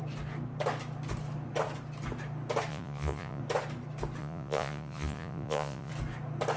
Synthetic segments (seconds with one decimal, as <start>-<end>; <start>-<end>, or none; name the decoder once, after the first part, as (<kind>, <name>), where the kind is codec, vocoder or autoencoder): 2.7-3.4 (vocoder, Vocos); 4.2-5.9